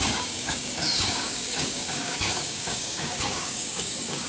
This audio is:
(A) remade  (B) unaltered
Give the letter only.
A